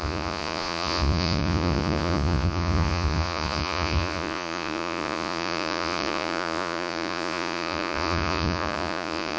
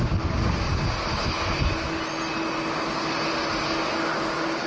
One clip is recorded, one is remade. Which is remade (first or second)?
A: first